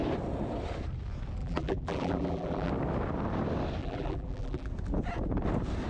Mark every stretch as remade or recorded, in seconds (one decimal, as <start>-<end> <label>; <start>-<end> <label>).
0.0-1.4 recorded; 1.4-2.7 remade; 2.7-3.8 recorded; 3.8-4.7 remade; 4.7-5.9 recorded